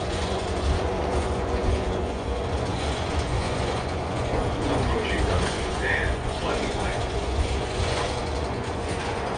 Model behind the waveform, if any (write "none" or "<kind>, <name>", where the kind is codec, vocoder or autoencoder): vocoder, Vocos